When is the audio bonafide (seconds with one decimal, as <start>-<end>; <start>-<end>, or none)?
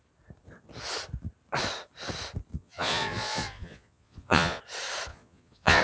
0.0-2.5; 4.6-5.1